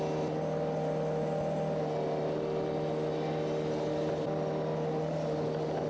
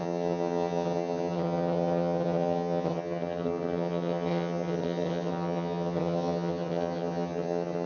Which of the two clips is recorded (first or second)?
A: first